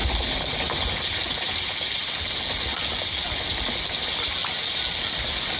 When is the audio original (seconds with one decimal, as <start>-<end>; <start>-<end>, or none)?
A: 0.0-5.6